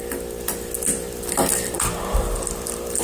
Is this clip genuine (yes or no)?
yes